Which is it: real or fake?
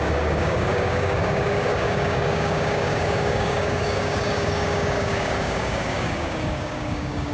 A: fake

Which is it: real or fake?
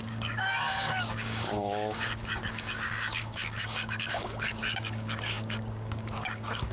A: fake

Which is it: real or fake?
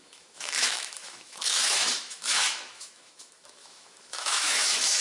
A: fake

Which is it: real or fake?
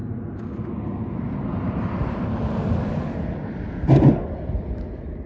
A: real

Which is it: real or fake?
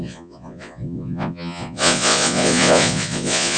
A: fake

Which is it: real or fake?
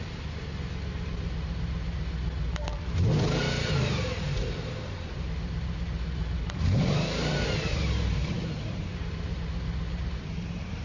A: fake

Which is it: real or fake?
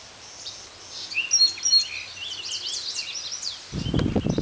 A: real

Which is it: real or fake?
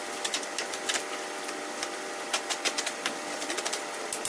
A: fake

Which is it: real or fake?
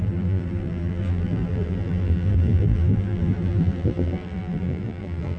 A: fake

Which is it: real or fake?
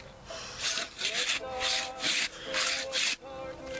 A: real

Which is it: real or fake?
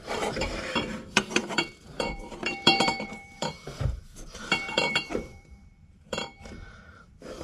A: fake